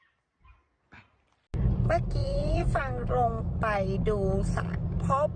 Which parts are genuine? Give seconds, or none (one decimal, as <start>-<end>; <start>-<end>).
0.0-2.2; 2.8-5.4